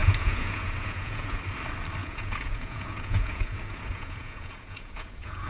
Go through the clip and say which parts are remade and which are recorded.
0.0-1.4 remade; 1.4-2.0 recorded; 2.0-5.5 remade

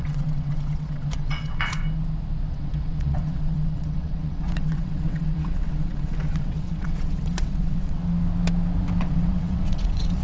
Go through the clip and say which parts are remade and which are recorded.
0.0-1.8 remade; 1.8-2.5 recorded; 2.5-8.0 remade; 8.0-9.0 recorded; 9.0-10.2 remade

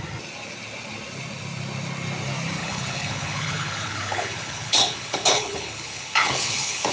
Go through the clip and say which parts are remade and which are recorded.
0.0-2.6 recorded; 2.6-6.9 remade

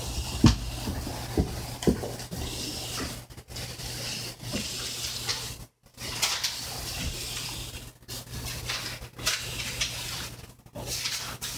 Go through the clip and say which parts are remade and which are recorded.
0.0-11.6 recorded

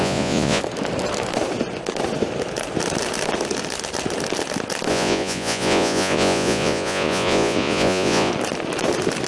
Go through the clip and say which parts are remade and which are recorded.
0.0-0.6 remade; 0.6-4.9 recorded; 4.9-8.3 remade; 8.3-9.3 recorded

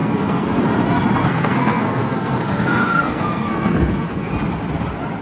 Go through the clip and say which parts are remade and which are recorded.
0.0-0.6 remade; 0.6-1.2 recorded; 1.2-4.3 remade; 4.3-5.2 recorded

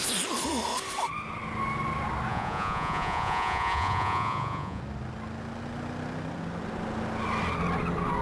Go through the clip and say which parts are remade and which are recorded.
0.0-2.3 recorded; 2.3-4.8 remade; 4.8-8.2 recorded

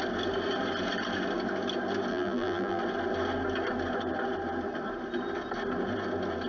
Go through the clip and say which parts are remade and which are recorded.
0.0-2.1 recorded; 2.1-2.8 remade; 2.8-6.5 recorded